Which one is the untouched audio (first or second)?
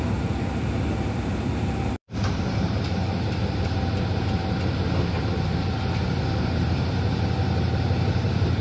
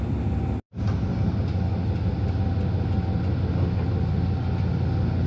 second